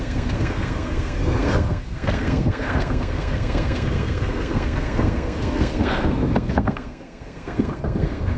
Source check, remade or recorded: remade